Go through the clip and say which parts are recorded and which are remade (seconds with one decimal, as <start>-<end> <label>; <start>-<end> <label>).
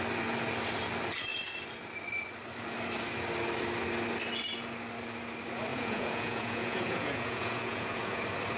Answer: 0.0-5.7 recorded; 5.7-8.2 remade; 8.2-8.6 recorded